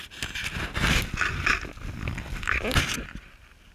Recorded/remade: recorded